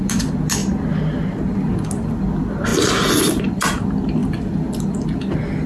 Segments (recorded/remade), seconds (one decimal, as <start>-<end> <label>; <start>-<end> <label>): 0.0-5.7 recorded